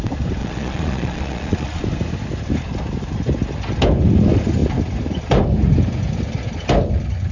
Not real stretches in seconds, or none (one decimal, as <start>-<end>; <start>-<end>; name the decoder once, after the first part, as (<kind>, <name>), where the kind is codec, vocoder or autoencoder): 0.4-1.8 (vocoder, Vocos)